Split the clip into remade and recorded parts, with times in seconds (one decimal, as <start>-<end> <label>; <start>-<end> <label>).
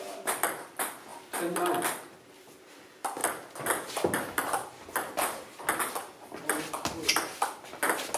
0.0-8.2 recorded